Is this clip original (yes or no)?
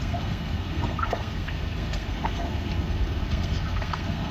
no